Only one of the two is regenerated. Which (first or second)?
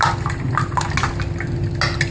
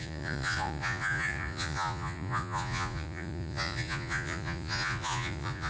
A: second